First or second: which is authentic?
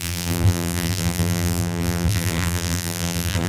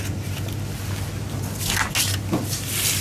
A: second